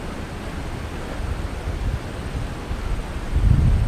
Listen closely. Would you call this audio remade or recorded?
recorded